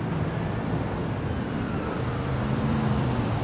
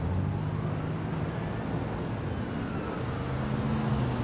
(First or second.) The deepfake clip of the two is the first